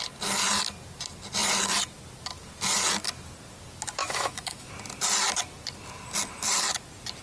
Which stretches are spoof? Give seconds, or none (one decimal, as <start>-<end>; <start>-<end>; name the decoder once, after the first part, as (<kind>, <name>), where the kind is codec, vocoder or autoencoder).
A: 4.0-4.7 (autoencoder, DAC-VAE)